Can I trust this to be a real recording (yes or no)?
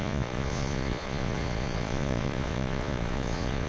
no